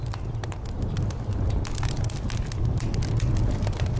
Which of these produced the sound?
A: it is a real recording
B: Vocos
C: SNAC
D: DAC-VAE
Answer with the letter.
A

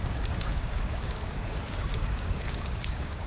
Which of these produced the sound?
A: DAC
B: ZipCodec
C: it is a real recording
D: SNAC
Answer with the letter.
A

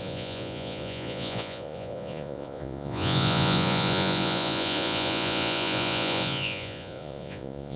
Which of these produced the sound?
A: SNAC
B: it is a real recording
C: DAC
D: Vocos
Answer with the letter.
D